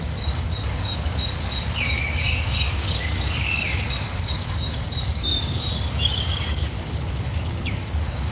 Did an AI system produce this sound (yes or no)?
yes